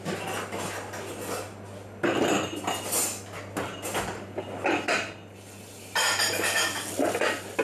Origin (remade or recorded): recorded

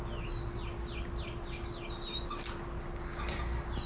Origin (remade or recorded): recorded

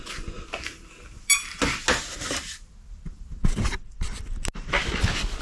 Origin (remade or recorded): recorded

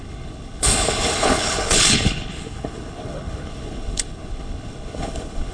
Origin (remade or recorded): remade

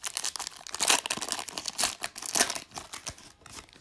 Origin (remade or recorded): recorded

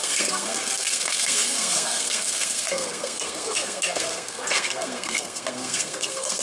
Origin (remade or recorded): remade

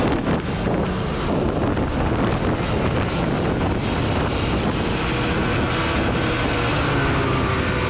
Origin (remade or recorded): recorded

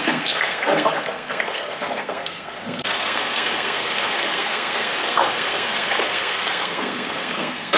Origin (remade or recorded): remade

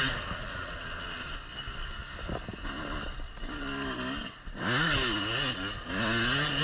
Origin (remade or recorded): recorded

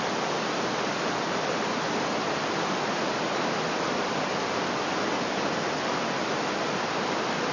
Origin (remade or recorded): recorded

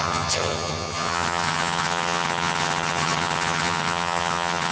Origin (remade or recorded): remade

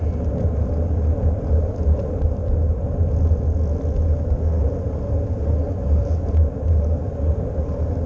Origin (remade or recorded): recorded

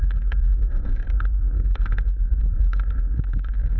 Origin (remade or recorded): remade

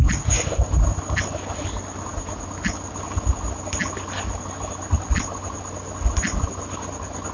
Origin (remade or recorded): recorded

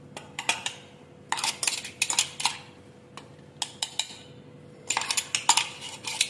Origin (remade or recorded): recorded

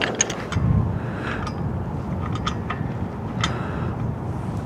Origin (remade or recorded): recorded